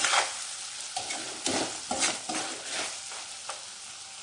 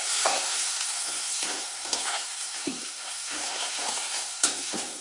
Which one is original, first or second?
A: first